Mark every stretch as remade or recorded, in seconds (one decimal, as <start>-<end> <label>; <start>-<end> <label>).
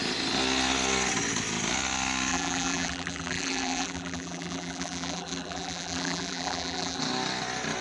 0.0-2.3 recorded; 2.3-7.0 remade; 7.0-7.8 recorded